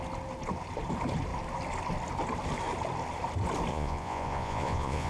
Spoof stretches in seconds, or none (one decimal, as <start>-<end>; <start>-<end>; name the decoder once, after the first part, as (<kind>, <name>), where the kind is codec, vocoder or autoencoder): 3.7-5.1 (vocoder, Vocos)